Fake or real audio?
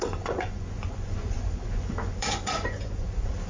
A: fake